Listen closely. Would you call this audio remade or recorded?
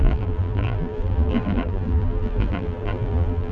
remade